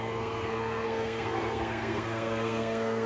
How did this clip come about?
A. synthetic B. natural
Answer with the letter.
A